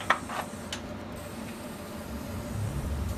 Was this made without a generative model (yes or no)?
yes